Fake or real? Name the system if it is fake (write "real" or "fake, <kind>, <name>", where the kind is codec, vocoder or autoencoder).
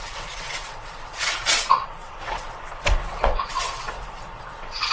fake, vocoder, WaveNeXt